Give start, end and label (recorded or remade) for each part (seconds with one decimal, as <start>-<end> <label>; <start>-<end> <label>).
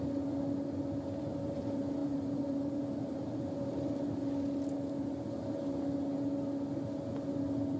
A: 0.0-2.0 recorded; 2.0-4.2 remade; 4.2-7.8 recorded